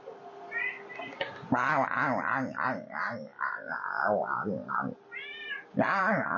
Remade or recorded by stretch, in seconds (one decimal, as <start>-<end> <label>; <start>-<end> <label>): 0.0-6.4 recorded